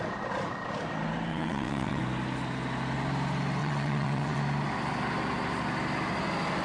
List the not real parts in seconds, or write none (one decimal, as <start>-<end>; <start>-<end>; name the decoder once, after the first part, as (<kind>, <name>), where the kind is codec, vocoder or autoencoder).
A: 1.3-2.0 (vocoder, WaveNeXt); 3.6-4.4

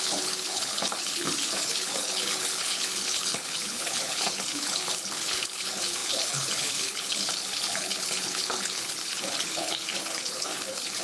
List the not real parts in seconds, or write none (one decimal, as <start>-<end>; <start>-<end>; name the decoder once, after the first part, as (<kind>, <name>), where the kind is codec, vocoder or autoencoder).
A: 0.0-11.0 (codec, HILCodec)

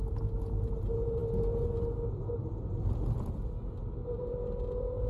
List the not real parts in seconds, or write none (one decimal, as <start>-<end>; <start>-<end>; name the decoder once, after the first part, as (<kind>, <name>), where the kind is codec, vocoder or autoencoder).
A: none

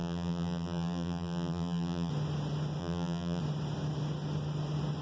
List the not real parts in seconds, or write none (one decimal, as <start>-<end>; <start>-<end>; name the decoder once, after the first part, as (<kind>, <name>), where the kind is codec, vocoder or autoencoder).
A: 0.0-2.1 (vocoder, BigVGAN v2); 2.8-3.4

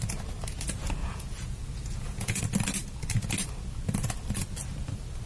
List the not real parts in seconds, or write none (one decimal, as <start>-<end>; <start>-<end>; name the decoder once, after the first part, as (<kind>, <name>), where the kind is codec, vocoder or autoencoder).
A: 1.0-2.4 (vocoder, Vocos)